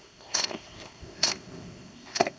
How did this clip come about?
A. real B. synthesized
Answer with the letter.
B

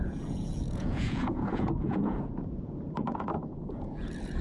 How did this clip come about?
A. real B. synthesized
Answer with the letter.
B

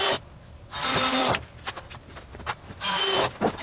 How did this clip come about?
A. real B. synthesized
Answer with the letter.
B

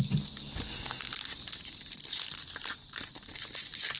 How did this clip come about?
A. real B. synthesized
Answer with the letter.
A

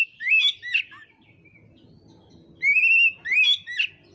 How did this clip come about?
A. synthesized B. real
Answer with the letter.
B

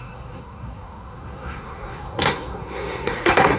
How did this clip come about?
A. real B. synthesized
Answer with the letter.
B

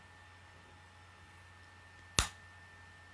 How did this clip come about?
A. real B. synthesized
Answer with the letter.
A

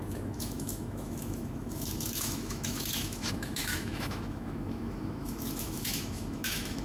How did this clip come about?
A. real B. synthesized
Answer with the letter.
B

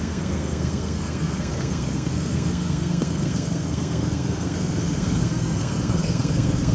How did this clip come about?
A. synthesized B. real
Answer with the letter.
A